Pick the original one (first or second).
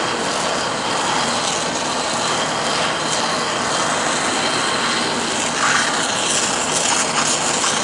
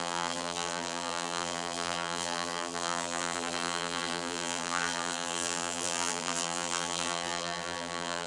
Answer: first